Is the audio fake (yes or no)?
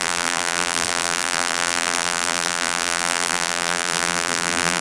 yes